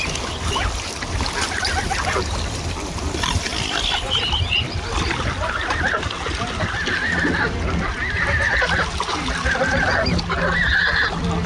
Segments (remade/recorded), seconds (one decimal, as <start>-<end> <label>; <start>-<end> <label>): 0.0-11.5 recorded